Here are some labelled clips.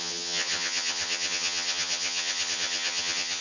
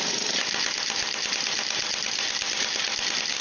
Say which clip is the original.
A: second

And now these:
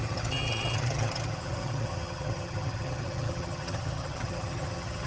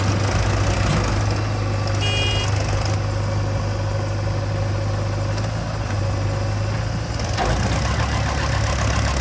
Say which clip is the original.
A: second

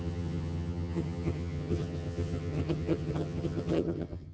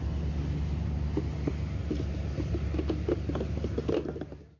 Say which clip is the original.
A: second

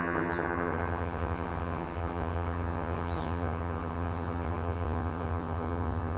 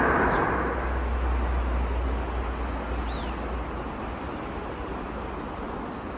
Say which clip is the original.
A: second